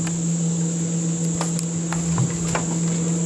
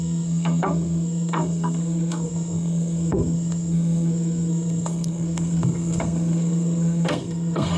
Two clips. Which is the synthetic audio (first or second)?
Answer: second